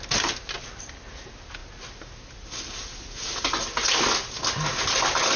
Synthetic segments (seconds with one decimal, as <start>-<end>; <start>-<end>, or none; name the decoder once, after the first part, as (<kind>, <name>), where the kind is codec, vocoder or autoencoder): none